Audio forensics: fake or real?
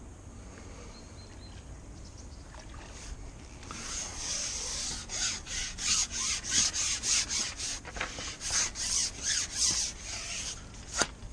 real